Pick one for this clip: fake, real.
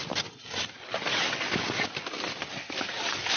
real